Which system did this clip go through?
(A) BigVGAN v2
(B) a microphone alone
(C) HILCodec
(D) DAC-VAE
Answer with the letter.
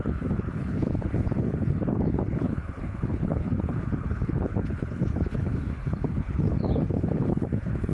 C